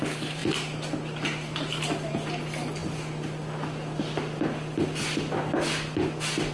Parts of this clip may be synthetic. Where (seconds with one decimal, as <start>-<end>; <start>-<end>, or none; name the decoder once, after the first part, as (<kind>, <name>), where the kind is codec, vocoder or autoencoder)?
none